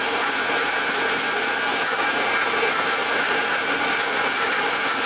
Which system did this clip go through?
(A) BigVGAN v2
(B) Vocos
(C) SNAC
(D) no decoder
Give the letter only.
D